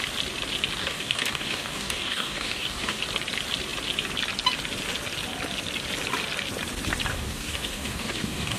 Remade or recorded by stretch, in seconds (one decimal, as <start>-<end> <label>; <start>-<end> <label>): 0.0-0.8 recorded; 0.8-3.0 remade; 3.0-7.1 recorded; 7.1-8.6 remade